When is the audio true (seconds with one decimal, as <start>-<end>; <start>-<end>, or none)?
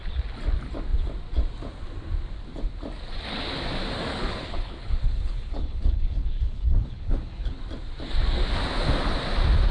0.0-4.1; 7.6-9.7